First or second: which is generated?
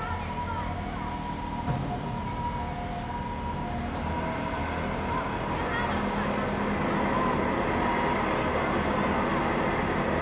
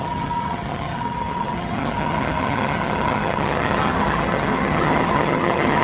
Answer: second